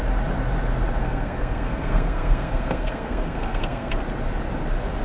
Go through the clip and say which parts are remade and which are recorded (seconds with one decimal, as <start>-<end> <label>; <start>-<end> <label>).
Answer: 0.0-1.0 recorded; 1.0-4.0 remade; 4.0-5.0 recorded